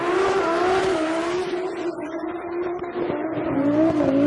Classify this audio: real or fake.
real